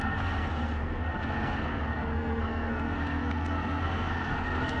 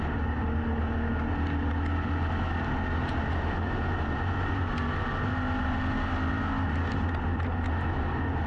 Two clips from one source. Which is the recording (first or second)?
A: second